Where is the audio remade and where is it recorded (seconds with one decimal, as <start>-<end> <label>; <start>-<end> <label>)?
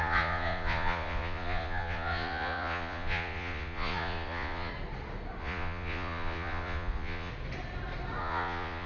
0.0-4.7 remade; 4.7-5.4 recorded; 5.4-7.3 remade; 7.3-8.2 recorded; 8.2-8.9 remade